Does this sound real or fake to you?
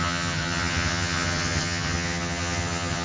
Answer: fake